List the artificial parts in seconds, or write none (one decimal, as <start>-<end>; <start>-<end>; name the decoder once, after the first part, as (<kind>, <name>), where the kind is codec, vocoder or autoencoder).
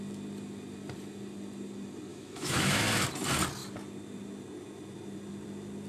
2.1-2.8 (autoencoder, DAC-VAE)